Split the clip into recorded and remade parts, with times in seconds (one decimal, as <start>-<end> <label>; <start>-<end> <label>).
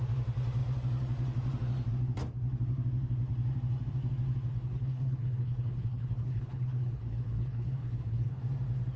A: 0.0-4.5 recorded; 4.5-8.4 remade; 8.4-9.0 recorded